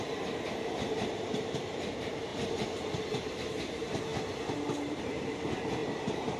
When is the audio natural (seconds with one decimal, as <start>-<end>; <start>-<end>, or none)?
4.1-5.1